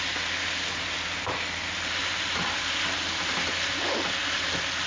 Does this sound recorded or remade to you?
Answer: recorded